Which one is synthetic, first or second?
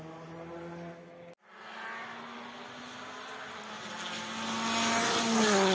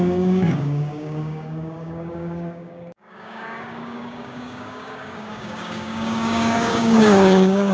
second